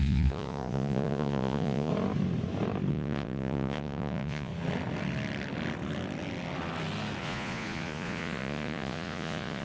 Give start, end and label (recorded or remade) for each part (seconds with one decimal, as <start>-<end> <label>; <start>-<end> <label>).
0.0-1.9 remade; 1.9-2.9 recorded; 2.9-4.5 remade; 4.5-7.2 recorded; 7.2-9.6 remade